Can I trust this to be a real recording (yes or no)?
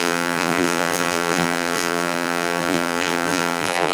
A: no